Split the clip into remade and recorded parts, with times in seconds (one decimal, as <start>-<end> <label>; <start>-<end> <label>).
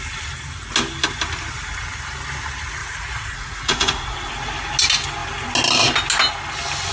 0.0-2.8 recorded; 2.8-4.3 remade; 4.3-6.9 recorded